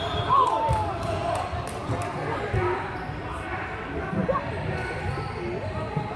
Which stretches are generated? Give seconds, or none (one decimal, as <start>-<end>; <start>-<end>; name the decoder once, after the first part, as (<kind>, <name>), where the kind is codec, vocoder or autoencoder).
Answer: none